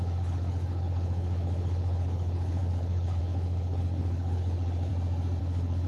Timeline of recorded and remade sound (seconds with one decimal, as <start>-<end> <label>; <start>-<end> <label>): 0.0-4.9 remade; 4.9-5.4 recorded; 5.4-5.9 remade